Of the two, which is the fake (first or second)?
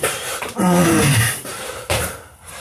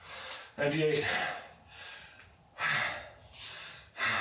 first